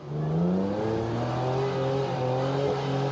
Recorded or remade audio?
recorded